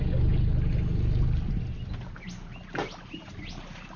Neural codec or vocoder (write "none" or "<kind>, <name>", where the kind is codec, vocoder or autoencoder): none